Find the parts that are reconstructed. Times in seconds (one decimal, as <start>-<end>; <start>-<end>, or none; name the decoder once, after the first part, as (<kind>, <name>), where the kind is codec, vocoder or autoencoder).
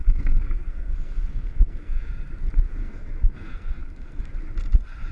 0.0-2.1 (codec, SNAC); 2.8-4.2